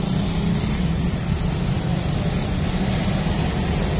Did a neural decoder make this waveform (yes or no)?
no